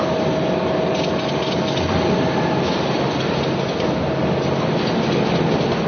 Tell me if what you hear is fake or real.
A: real